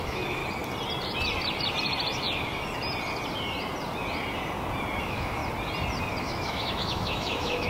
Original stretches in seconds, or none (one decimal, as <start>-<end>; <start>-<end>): 0.4-5.0; 5.4-6.2